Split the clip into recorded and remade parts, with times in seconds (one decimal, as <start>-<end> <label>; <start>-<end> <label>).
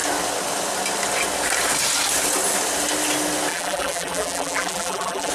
0.0-3.5 recorded; 3.5-5.3 remade